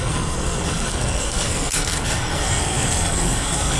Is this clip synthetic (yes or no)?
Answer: yes